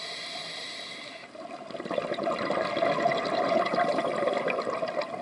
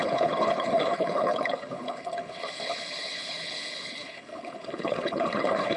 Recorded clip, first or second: first